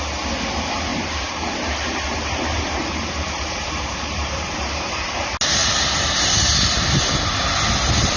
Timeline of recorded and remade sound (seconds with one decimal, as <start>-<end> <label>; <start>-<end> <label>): 0.0-0.9 recorded; 0.9-5.2 remade; 5.2-8.2 recorded